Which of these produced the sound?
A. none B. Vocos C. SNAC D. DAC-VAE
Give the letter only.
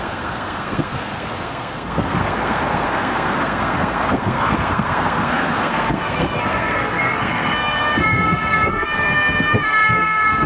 C